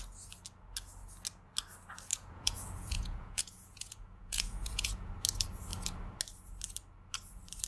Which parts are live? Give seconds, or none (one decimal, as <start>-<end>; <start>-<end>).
0.0-2.1; 5.1-7.7